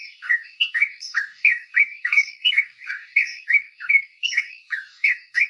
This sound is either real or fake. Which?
fake